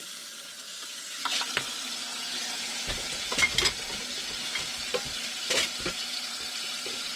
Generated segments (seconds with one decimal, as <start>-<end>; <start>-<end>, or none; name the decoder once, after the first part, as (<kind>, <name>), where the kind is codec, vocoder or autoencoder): 2.1-3.4 (vocoder, Vocos)